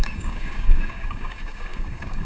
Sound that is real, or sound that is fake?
fake